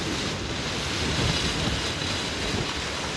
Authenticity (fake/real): real